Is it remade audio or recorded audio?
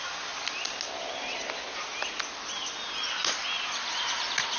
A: recorded